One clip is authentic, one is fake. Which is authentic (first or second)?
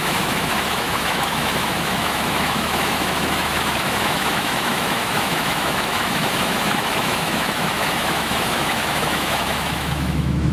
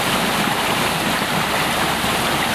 second